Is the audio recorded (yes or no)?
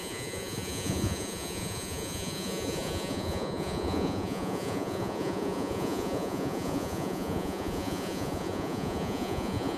no